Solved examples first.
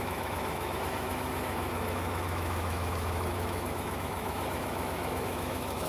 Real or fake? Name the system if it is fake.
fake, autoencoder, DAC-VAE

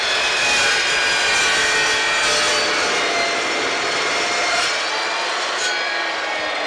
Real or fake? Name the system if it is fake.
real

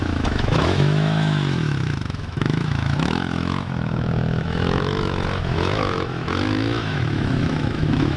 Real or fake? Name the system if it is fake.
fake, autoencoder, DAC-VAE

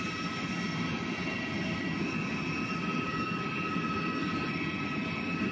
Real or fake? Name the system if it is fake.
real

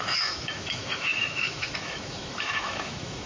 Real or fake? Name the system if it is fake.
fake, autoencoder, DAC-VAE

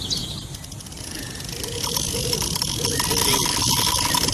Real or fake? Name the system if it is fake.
real